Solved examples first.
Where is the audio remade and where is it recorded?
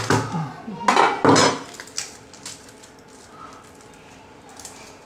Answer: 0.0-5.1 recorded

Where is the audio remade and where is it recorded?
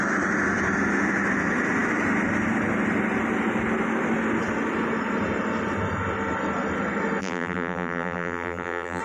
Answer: 0.0-7.2 recorded; 7.2-9.0 remade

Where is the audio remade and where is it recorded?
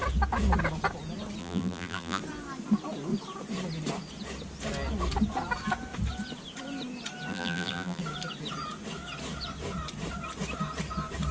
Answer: 0.0-1.4 recorded; 1.4-2.2 remade; 2.2-7.3 recorded; 7.3-8.0 remade; 8.0-11.3 recorded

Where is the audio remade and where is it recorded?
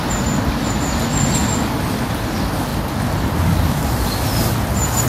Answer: 0.0-5.1 recorded